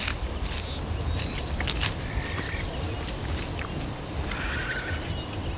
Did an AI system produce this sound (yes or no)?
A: no